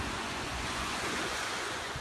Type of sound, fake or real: fake